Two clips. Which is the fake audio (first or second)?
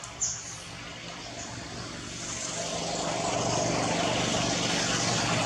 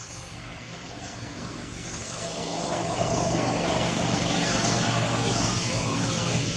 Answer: second